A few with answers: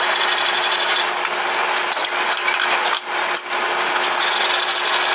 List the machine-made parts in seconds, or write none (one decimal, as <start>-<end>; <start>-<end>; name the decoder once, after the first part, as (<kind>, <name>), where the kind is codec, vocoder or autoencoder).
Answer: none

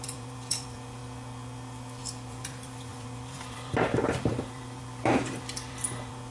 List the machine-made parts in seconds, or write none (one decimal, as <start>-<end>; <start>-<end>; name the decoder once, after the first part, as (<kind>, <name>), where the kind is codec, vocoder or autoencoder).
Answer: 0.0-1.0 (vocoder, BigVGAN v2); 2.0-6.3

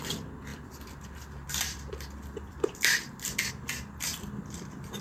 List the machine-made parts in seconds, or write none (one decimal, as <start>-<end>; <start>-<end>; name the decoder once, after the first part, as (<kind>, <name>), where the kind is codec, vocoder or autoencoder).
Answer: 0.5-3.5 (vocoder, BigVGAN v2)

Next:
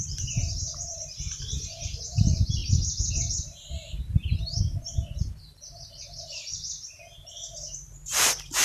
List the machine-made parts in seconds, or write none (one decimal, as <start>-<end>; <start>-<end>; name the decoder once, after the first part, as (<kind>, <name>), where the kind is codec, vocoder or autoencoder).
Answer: 0.0-8.6 (vocoder, BigVGAN v2)

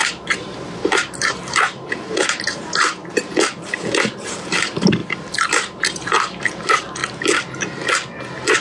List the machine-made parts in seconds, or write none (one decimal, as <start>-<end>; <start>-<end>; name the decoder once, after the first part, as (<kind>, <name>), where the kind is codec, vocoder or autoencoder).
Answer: 0.0-3.0 (vocoder, BigVGAN v2); 3.8-5.0; 5.5-7.0

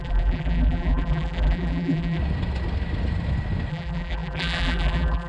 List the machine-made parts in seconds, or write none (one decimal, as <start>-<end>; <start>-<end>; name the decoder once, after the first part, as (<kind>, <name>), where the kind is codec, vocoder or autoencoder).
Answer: 0.0-2.2 (vocoder, BigVGAN v2); 3.7-5.3